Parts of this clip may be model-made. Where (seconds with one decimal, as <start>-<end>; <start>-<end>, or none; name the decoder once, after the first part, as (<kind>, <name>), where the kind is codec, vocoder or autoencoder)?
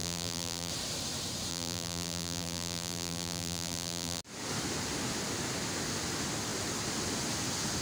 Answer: 0.0-0.7 (vocoder, BigVGAN v2); 1.5-4.2